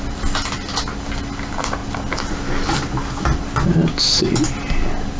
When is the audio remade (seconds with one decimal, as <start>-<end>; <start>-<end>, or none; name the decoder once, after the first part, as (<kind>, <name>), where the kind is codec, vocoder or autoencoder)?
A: none